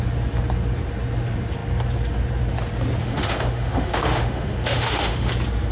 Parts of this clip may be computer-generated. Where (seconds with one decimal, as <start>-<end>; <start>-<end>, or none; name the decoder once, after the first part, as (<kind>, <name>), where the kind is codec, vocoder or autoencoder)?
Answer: 3.0-5.3 (autoencoder, DAC-VAE)